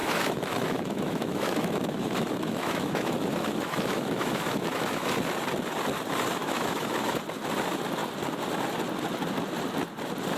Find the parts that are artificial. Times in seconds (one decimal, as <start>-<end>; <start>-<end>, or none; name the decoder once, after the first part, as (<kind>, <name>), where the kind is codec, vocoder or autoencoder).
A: 0.0-5.2 (autoencoder, DAC-VAE); 6.4-7.2